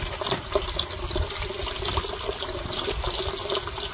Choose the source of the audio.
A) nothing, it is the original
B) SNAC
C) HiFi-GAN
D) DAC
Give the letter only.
A